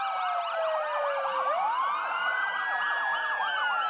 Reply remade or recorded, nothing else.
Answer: recorded